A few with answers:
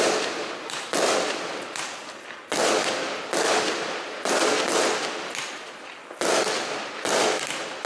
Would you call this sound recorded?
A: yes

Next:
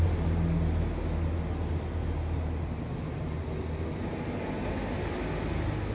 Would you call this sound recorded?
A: yes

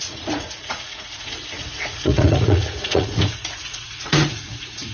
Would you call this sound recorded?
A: no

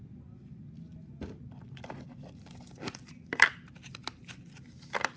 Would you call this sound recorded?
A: yes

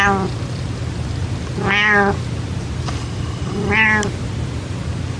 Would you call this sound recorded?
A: yes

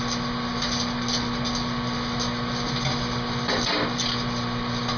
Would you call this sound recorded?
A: yes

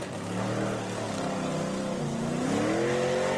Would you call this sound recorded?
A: yes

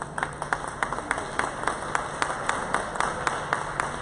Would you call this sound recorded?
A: yes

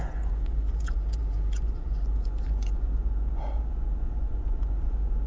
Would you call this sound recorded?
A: no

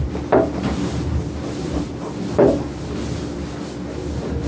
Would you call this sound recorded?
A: yes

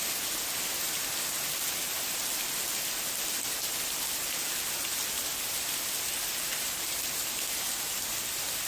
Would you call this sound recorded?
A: yes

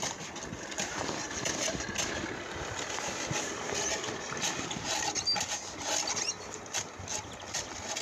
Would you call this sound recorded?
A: yes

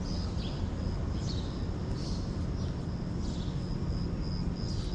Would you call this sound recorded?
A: yes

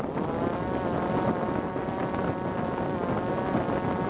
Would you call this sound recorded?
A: yes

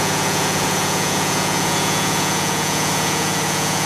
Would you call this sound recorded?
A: no